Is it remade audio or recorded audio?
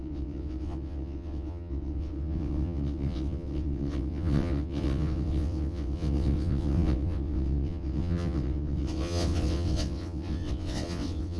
remade